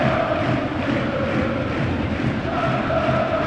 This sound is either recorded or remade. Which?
remade